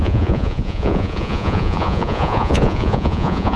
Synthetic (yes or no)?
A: yes